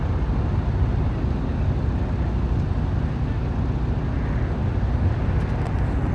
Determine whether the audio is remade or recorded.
recorded